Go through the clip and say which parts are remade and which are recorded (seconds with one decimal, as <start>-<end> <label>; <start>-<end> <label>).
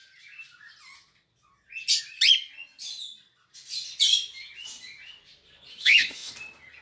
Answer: 0.0-5.7 recorded; 5.7-6.3 remade; 6.3-6.8 recorded